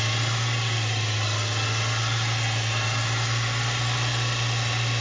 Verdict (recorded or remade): recorded